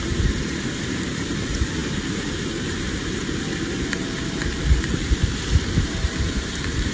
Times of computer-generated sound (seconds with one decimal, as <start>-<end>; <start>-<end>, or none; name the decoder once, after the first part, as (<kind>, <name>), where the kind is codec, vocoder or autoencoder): 0.0-6.9 (vocoder, BigVGAN v2)